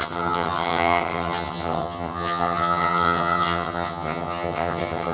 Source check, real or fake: fake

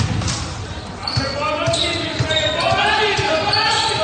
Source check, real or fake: real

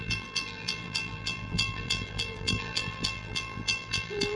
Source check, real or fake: fake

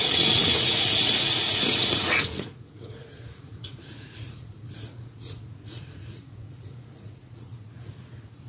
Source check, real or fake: fake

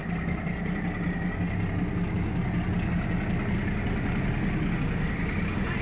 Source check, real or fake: real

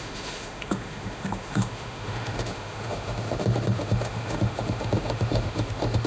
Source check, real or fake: fake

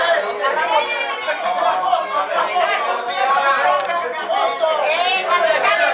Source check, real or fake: real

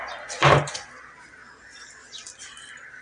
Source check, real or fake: fake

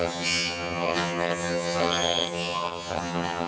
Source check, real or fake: fake